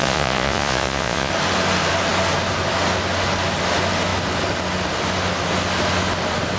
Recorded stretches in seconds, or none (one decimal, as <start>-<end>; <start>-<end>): 1.3-6.6